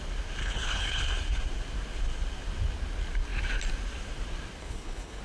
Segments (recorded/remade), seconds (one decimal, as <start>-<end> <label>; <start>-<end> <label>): 0.0-0.4 recorded; 0.4-1.0 remade; 1.0-4.6 recorded; 4.6-5.2 remade